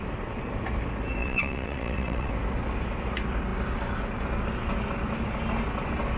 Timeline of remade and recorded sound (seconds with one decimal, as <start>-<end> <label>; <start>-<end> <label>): 0.0-1.2 recorded; 1.2-2.3 remade; 2.3-6.2 recorded